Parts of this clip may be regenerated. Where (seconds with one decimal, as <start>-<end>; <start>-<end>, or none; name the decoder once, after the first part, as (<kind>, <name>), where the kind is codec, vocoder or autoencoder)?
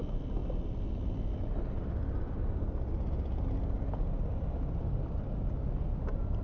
none